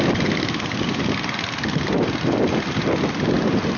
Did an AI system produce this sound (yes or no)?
no